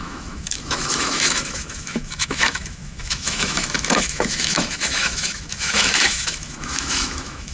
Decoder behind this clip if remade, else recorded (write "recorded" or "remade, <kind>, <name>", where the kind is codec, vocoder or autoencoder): remade, autoencoder, DAC-VAE